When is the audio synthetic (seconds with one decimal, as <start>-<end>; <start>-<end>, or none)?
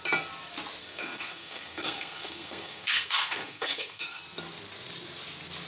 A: 0.8-4.2